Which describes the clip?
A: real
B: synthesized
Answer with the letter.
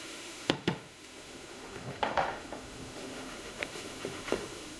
B